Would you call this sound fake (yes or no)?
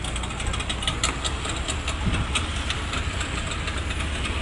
no